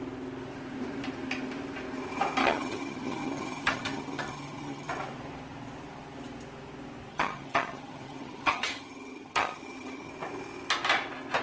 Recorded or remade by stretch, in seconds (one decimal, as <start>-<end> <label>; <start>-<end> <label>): 0.0-2.4 recorded; 2.4-4.9 remade; 4.9-7.1 recorded; 7.1-10.1 remade; 10.1-11.4 recorded